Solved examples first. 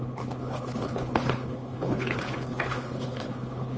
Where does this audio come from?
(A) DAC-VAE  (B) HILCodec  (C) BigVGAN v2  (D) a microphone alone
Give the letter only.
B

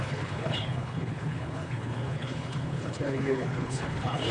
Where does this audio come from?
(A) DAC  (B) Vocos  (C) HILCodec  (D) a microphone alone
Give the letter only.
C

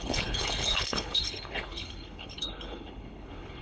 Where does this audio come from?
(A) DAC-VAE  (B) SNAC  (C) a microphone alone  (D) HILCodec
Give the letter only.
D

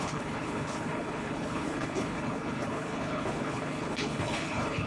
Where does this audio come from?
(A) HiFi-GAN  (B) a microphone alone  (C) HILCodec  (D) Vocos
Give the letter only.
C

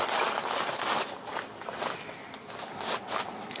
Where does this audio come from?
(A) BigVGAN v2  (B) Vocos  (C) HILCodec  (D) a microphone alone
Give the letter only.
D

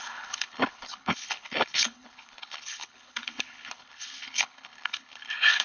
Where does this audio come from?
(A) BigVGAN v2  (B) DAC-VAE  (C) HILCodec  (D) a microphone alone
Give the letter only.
C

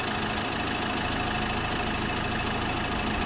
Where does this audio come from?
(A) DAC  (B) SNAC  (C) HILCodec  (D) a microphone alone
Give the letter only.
D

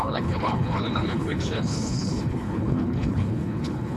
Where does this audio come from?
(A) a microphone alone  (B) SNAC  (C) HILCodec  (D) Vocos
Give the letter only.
C